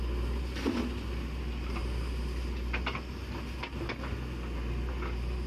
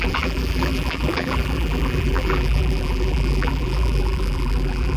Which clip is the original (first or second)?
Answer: first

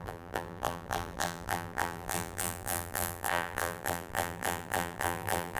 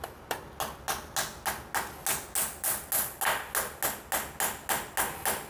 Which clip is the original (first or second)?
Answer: second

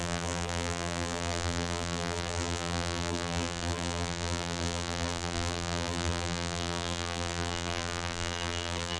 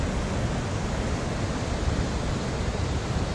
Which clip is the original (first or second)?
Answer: second